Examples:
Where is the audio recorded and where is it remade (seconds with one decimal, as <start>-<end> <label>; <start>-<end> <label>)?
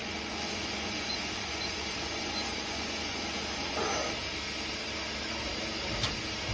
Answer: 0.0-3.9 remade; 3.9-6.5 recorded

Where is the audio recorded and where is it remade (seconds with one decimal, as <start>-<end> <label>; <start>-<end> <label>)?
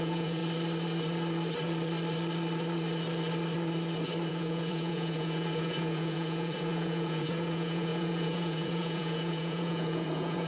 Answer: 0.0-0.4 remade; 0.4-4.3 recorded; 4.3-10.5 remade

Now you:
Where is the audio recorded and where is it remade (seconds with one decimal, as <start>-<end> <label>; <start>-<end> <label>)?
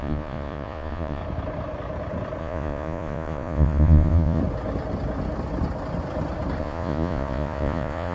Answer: 0.0-1.2 remade; 1.2-2.4 recorded; 2.4-4.4 remade; 4.4-6.6 recorded; 6.6-8.1 remade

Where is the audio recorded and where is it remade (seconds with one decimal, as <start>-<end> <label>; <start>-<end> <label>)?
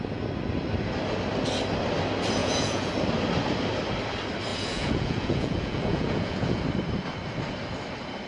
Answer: 0.0-2.4 recorded; 2.4-2.9 remade; 2.9-4.5 recorded; 4.5-6.6 remade; 6.6-8.3 recorded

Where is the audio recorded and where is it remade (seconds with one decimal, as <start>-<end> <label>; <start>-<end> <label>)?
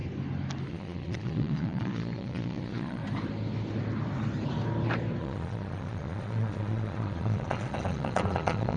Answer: 0.0-0.7 recorded; 0.7-3.0 remade; 3.0-5.2 recorded; 5.2-8.8 remade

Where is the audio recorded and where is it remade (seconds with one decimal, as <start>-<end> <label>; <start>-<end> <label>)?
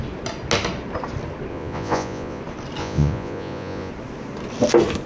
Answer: 0.0-1.5 recorded; 1.5-2.4 remade; 2.4-2.8 recorded; 2.8-3.9 remade; 3.9-5.1 recorded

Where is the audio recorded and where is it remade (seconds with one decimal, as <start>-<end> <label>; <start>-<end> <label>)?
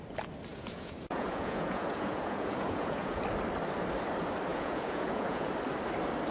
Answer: 0.0-0.5 recorded; 0.5-3.2 remade; 3.2-4.5 recorded; 4.5-5.5 remade; 5.5-6.3 recorded